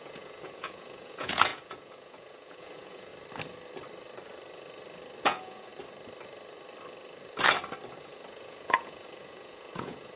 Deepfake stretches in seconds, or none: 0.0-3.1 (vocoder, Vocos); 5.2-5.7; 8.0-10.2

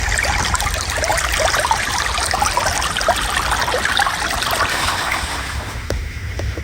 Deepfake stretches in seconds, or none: 4.7-6.6 (autoencoder, DAC-VAE)

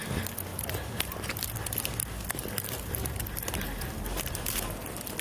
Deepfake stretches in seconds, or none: 0.5-1.4 (vocoder, BigVGAN v2); 2.4-4.4